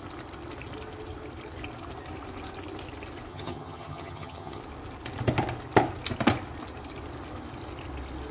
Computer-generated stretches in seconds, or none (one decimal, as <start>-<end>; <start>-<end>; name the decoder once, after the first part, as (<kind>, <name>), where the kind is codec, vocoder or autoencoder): 3.3-4.6 (vocoder, HiFi-GAN)